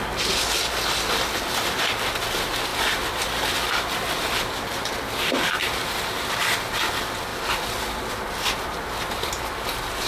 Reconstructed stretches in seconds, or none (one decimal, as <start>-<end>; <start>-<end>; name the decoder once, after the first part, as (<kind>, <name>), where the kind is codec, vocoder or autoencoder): 2.7-4.4 (vocoder, BigVGAN v2); 7.3-9.5